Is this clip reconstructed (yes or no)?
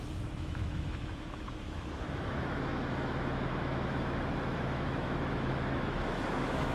yes